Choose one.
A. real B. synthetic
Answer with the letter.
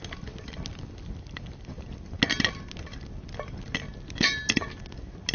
A